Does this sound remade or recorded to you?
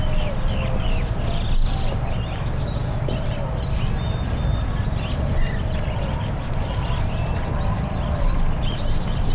recorded